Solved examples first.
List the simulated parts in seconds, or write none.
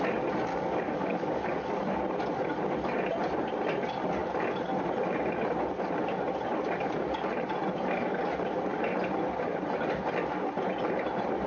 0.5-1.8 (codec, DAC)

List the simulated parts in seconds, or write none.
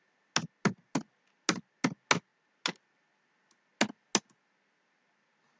none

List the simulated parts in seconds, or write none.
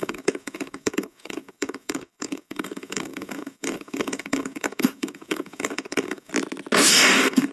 0.0-6.3 (codec, DAC); 6.9-7.5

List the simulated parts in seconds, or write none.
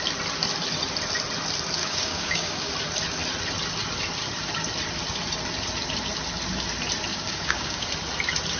1.8-2.7 (codec, DAC); 7.1-7.9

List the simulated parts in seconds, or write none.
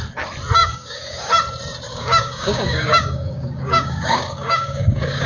0.6-1.3 (codec, DAC); 1.9-5.3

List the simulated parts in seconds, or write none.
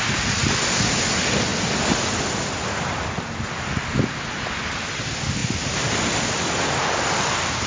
none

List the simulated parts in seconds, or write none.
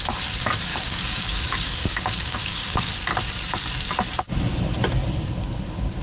0.7-2.9 (codec, DAC)